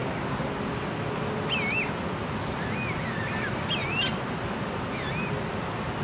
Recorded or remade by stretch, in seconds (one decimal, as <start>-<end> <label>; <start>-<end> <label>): 0.0-6.0 recorded